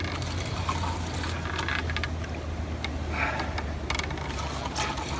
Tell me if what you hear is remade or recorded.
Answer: recorded